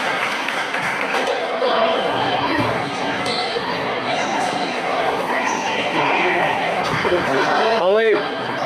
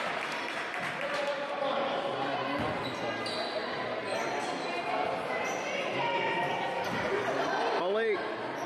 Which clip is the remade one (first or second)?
first